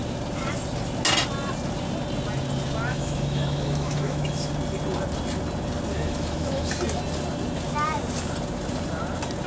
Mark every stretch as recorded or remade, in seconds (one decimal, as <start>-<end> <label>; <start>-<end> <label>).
0.0-2.9 recorded; 2.9-4.5 remade; 4.5-5.9 recorded; 5.9-6.7 remade; 6.7-9.5 recorded